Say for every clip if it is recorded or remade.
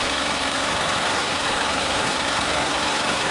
remade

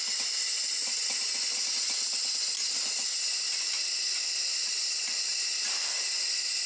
recorded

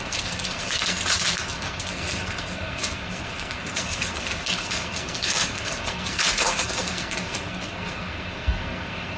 remade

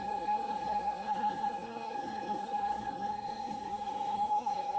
remade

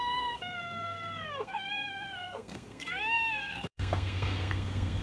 remade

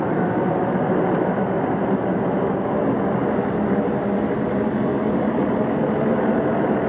recorded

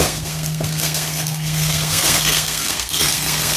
remade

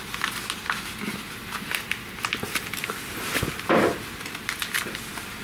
recorded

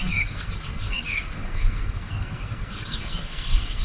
remade